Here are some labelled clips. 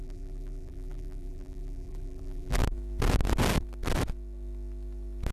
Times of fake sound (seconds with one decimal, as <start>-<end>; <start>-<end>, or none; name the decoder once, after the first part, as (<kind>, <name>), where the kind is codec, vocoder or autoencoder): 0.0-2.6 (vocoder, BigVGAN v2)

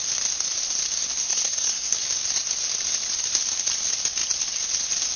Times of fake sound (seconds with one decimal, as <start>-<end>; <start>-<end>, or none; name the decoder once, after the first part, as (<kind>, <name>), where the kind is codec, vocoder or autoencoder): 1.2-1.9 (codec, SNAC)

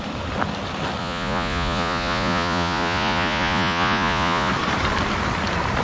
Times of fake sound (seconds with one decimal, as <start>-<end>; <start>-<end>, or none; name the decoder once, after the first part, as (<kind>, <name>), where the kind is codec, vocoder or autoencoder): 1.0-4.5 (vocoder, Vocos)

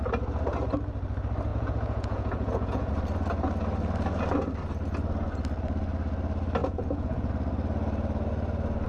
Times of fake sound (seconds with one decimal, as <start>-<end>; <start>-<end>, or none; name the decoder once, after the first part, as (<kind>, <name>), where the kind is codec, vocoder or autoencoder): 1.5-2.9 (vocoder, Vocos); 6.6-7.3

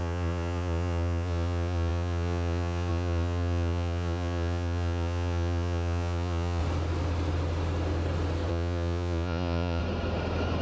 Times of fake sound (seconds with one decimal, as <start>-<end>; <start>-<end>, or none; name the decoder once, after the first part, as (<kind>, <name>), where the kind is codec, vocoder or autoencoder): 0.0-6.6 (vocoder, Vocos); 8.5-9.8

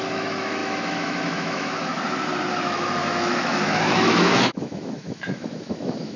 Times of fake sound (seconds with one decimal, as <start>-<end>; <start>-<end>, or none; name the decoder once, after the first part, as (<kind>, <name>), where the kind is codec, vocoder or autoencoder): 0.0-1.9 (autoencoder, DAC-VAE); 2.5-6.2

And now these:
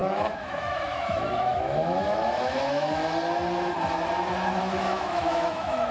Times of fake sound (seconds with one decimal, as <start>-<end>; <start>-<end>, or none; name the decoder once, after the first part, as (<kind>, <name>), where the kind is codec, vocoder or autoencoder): 0.0-3.0 (autoencoder, DAC-VAE); 4.6-5.9